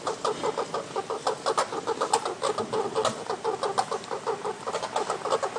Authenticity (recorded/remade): recorded